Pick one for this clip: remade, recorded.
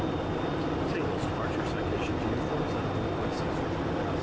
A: recorded